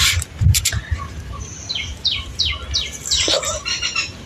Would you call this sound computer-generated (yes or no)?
yes